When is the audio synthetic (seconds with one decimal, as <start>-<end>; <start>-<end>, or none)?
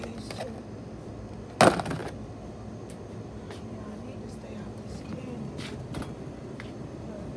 0.4-1.1